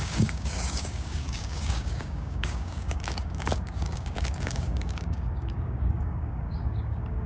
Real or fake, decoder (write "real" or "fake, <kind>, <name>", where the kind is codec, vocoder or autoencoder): fake, codec, DAC